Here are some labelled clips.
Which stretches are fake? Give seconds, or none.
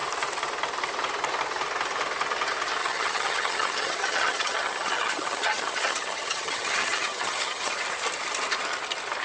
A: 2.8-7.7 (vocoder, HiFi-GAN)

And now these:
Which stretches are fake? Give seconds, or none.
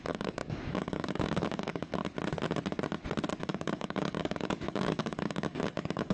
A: 0.0-2.0 (codec, DAC); 3.4-6.1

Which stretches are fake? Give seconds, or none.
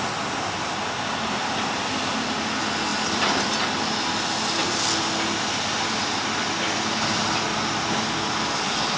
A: none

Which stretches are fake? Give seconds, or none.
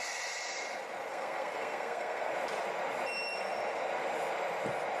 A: 1.1-2.3 (codec, SNAC)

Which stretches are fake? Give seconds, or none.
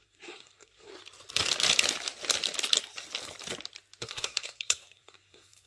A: 0.0-0.9 (codec, SNAC); 4.0-5.7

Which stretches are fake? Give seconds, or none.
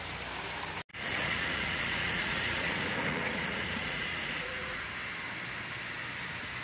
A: 0.9-4.9 (vocoder, Vocos)